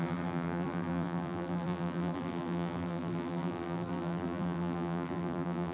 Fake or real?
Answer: fake